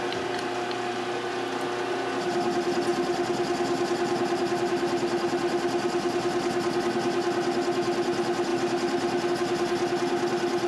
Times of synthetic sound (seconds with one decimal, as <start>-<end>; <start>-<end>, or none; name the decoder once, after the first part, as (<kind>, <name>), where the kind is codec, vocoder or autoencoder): 2.9-6.8 (vocoder, BigVGAN v2); 8.5-9.3